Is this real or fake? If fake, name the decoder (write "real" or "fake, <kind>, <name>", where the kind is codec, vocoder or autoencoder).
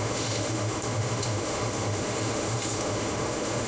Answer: fake, autoencoder, DAC-VAE